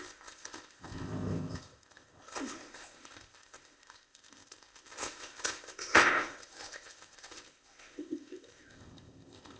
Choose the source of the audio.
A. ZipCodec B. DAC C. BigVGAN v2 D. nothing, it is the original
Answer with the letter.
A